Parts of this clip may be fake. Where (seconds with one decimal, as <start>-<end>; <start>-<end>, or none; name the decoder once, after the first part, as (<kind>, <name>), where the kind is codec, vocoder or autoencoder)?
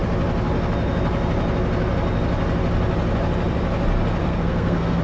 4.2-5.0 (codec, SNAC)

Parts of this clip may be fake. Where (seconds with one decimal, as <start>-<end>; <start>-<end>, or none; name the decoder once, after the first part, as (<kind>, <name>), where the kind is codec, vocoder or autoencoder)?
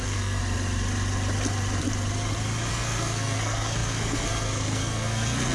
0.0-0.4 (codec, SNAC); 2.7-5.5